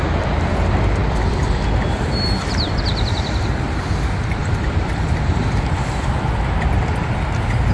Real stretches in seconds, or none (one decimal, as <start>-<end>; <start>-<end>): 0.0-1.0; 3.8-4.4; 5.3-7.7